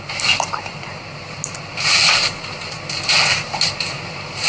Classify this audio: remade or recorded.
recorded